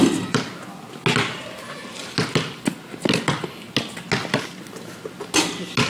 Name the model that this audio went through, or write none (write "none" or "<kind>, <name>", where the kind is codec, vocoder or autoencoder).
none